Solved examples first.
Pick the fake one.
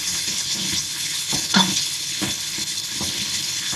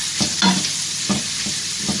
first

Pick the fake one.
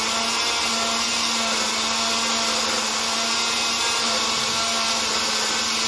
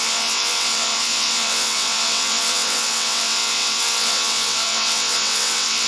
second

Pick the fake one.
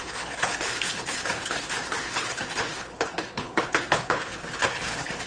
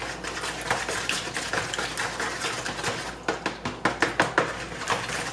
first